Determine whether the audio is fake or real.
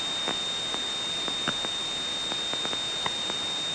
real